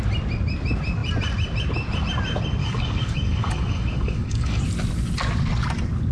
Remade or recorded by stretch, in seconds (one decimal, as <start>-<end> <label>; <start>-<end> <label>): 0.0-2.6 recorded; 2.6-4.6 remade; 4.6-6.1 recorded